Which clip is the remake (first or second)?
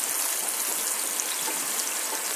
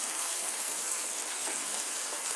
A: second